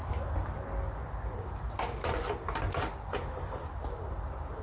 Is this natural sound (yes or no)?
yes